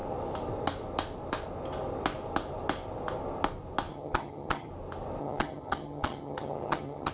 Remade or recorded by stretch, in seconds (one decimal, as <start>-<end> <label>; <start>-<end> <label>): 0.0-3.9 recorded; 3.9-4.7 remade; 4.7-5.2 recorded; 5.2-7.1 remade